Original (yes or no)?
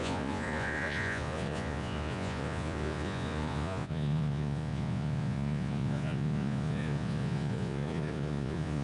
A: no